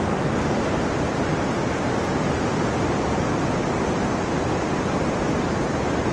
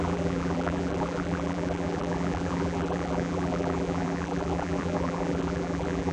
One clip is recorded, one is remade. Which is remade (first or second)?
second